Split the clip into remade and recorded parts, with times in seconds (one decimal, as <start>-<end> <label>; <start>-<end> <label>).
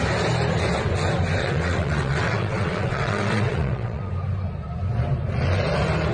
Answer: 0.0-1.4 recorded; 1.4-4.1 remade; 4.1-6.1 recorded